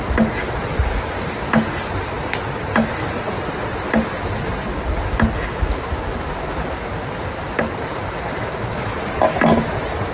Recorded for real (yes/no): yes